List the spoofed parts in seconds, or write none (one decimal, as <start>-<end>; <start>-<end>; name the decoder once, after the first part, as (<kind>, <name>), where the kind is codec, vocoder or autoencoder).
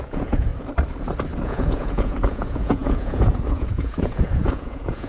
0.0-0.5 (vocoder, Vocos); 1.4-5.1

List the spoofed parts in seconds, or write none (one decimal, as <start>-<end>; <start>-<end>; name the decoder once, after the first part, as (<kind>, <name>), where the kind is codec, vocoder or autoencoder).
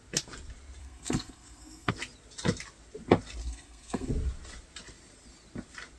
0.8-1.9 (codec, SNAC); 3.4-4.1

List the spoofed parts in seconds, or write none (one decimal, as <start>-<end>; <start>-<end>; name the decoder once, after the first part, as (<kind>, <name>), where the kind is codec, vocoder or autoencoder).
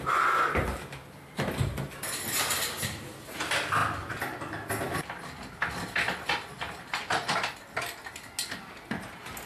none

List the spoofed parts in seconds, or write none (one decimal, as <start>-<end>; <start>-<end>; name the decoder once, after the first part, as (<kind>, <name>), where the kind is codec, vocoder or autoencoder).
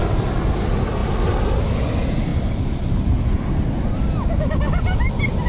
2.3-3.7 (vocoder, BigVGAN v2)